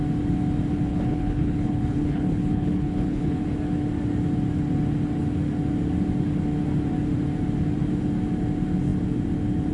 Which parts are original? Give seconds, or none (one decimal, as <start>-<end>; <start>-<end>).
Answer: 0.0-0.9; 3.4-9.7